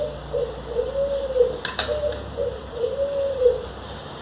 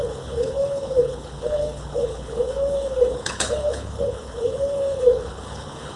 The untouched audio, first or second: first